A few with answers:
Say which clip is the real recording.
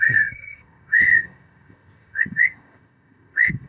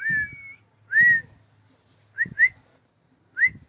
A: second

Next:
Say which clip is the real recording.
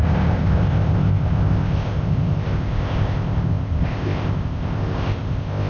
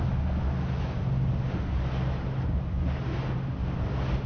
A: second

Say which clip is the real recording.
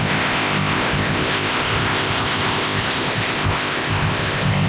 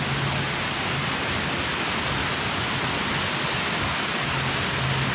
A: second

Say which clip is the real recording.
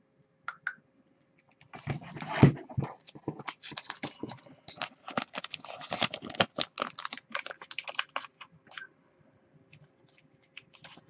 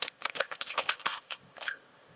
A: first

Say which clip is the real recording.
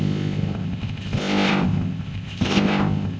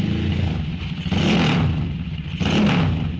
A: second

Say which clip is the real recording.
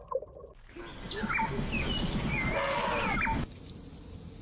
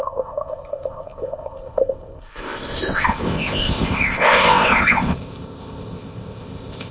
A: first